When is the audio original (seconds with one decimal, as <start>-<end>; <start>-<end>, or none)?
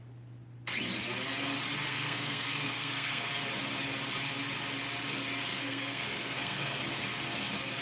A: 0.0-1.9; 3.3-5.5; 6.8-7.8